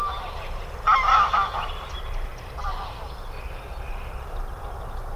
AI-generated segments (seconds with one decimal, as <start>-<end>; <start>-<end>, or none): 1.1-1.7